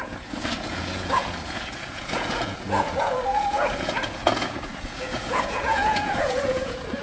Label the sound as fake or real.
fake